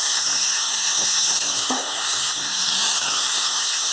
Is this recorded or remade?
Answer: remade